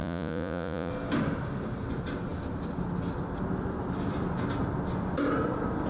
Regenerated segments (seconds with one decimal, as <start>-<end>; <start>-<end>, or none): 0.0-0.9

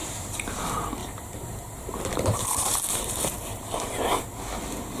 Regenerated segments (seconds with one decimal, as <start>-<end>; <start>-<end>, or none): 0.0-0.6; 1.0-4.0